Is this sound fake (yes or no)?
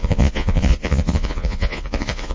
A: yes